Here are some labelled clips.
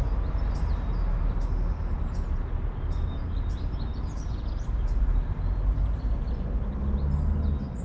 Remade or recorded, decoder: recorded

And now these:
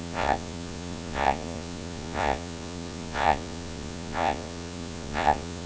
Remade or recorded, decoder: remade, vocoder, Vocos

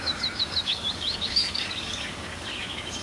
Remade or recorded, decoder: remade, codec, DAC